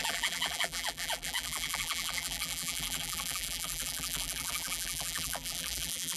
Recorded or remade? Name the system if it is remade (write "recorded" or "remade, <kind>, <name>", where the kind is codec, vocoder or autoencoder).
remade, vocoder, BigVGAN v2